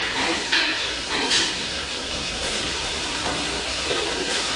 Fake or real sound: fake